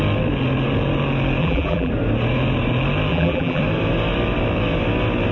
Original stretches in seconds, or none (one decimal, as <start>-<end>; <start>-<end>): 0.0-1.4; 1.9-3.1; 3.6-5.3